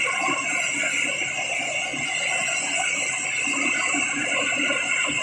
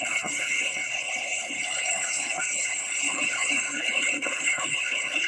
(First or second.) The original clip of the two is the first